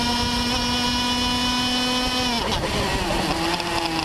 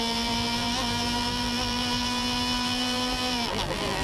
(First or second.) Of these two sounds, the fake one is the second